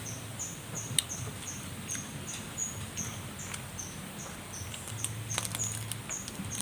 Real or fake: real